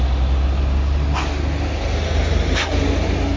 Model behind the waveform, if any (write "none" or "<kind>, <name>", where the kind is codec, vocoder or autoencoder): none